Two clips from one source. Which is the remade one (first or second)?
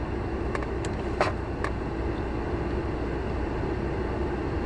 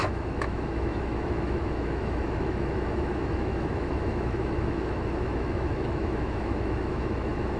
second